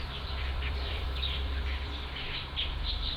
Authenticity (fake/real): fake